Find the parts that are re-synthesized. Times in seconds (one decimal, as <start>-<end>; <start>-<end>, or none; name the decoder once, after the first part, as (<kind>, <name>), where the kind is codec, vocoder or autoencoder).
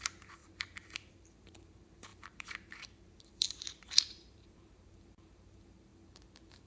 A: 0.0-6.7 (vocoder, BigVGAN v2)